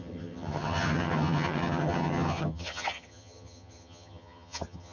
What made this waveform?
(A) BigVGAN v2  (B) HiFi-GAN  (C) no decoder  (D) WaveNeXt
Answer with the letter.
B